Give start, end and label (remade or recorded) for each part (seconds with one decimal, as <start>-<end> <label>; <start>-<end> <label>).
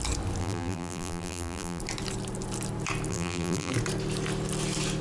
0.0-0.4 recorded; 0.4-1.8 remade; 1.8-3.1 recorded; 3.1-3.7 remade; 3.7-5.0 recorded